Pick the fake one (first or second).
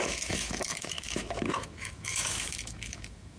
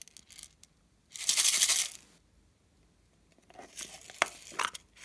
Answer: first